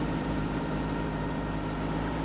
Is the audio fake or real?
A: fake